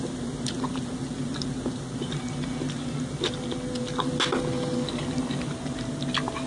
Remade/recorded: recorded